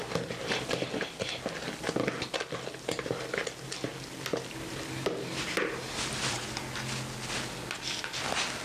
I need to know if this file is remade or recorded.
recorded